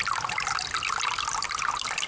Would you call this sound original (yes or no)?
yes